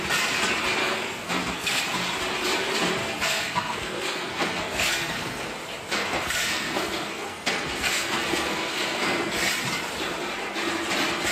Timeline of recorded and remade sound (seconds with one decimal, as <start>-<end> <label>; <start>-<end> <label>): 0.0-0.8 recorded; 0.8-1.8 remade; 1.8-3.0 recorded; 3.0-5.5 remade; 5.5-5.9 recorded; 5.9-9.5 remade; 9.5-11.3 recorded